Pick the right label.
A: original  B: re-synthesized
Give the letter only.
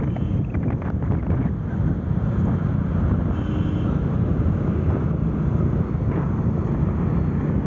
A